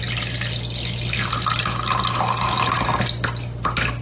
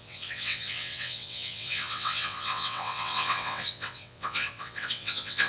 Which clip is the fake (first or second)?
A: second